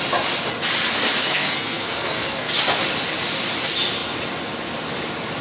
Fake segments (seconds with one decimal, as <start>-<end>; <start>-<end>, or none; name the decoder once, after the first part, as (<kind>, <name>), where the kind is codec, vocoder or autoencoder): 1.2-2.5 (codec, SNAC)